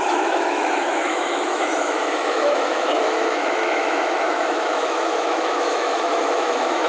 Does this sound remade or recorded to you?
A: remade